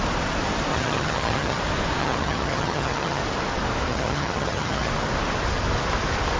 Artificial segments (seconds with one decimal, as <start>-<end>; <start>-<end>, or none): 0.7-1.6; 2.0-3.2; 3.9-4.9